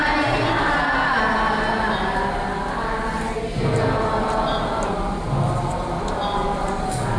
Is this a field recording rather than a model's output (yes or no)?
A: yes